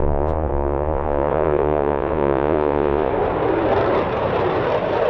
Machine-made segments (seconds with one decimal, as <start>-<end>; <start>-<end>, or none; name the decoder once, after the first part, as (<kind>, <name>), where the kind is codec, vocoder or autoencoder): 0.0-3.1 (vocoder, Vocos)